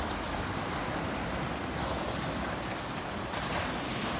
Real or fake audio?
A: real